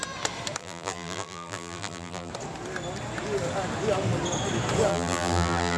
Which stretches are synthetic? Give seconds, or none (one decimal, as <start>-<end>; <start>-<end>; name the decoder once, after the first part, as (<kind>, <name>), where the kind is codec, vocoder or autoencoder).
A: 0.6-2.3 (vocoder, BigVGAN v2); 4.9-5.8